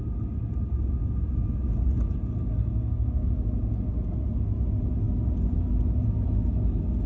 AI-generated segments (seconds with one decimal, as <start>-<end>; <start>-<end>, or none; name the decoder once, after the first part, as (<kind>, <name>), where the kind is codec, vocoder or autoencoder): 2.6-3.3 (codec, SNAC)